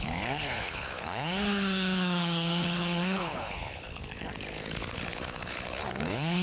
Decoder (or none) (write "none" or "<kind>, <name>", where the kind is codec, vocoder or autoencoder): codec, HILCodec